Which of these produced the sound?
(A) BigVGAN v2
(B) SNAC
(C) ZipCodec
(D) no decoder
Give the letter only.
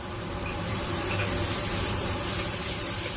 A